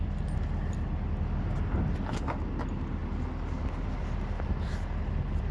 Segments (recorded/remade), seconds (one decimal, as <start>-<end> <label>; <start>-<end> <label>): 0.0-5.5 recorded